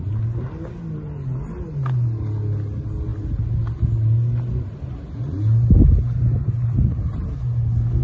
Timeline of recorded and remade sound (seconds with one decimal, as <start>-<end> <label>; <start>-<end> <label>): 0.0-8.0 recorded